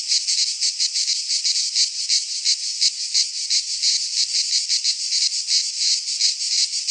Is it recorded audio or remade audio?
recorded